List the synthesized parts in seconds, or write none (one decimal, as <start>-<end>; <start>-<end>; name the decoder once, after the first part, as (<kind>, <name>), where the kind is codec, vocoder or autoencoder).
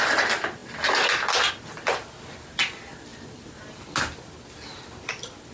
none